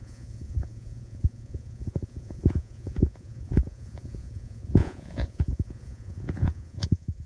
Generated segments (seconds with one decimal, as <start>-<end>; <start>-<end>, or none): 0.0-7.3